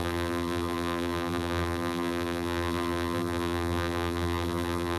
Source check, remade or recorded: remade